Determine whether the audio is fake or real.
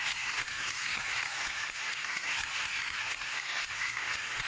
fake